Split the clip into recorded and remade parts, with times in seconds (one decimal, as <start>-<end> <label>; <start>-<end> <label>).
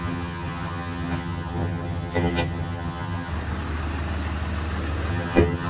0.0-3.3 remade; 3.3-5.1 recorded; 5.1-5.7 remade